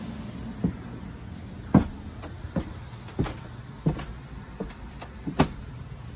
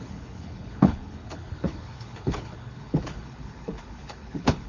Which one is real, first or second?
first